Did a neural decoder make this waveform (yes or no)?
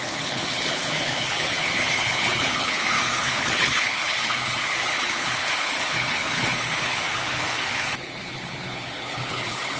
yes